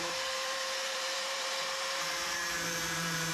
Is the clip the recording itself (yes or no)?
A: no